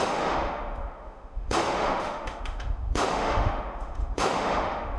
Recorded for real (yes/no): no